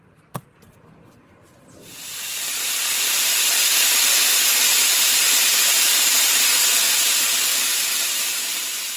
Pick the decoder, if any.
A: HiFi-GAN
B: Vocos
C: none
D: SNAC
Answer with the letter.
C